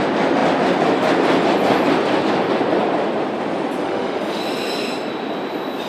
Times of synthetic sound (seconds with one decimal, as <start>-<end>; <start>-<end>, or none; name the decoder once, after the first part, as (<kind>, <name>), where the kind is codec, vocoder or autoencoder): 3.8-4.4 (autoencoder, DAC-VAE)